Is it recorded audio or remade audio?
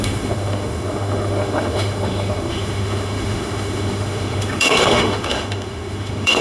remade